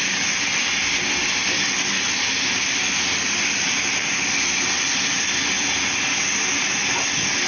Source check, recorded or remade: recorded